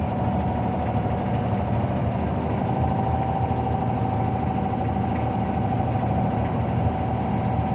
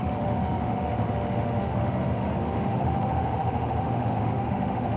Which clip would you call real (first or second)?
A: first